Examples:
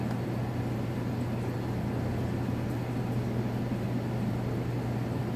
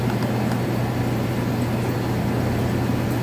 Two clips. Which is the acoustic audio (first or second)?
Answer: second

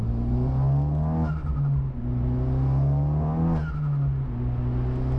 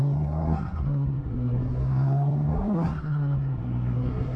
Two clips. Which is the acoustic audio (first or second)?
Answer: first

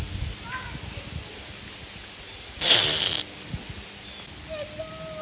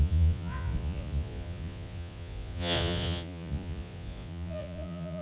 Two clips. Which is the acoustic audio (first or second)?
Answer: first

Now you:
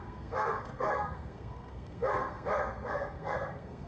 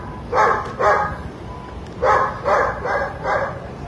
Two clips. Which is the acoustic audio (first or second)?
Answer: second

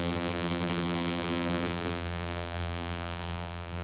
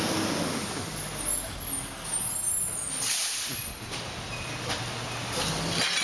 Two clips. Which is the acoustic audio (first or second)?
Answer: second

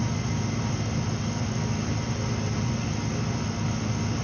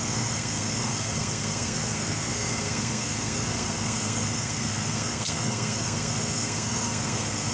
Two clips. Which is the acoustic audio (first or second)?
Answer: first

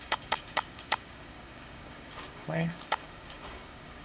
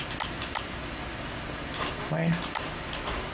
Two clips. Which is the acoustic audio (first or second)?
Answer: second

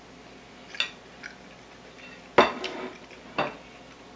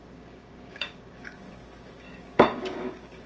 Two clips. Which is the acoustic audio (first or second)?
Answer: first